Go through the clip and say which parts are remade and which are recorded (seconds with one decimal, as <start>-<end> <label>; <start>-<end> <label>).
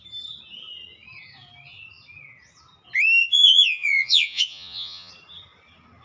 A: 0.0-3.2 recorded; 3.2-5.1 remade; 5.1-6.0 recorded